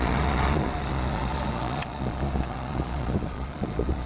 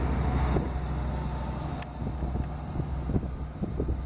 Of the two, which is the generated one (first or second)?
first